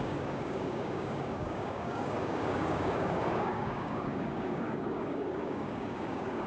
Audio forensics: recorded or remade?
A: remade